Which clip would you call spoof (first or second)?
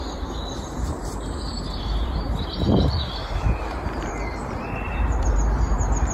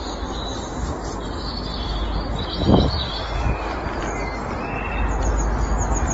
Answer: first